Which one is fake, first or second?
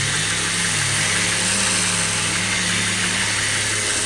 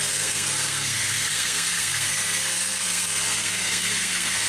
second